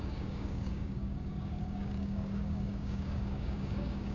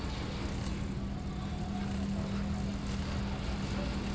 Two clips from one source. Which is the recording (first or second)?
second